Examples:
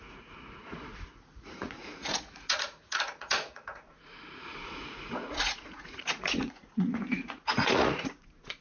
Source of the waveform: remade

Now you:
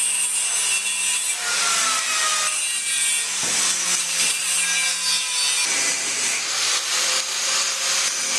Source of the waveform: recorded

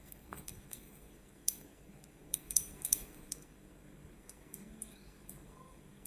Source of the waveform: remade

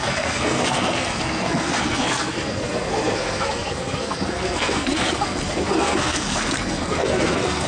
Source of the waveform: remade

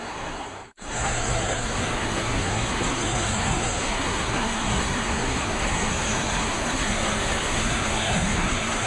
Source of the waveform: remade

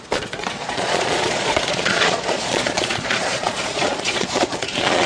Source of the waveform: remade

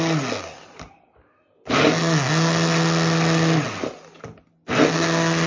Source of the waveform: recorded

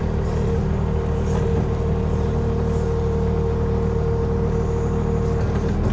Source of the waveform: recorded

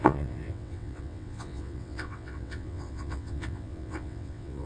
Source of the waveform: remade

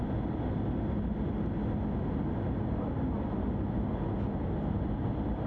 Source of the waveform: recorded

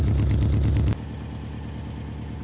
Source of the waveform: recorded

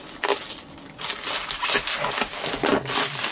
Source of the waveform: recorded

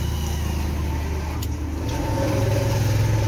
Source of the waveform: recorded